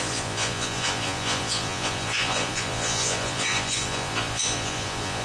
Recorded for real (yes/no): no